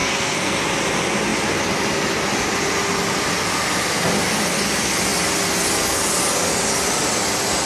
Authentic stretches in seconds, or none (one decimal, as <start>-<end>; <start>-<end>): 0.6-7.7